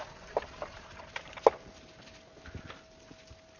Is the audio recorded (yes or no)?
yes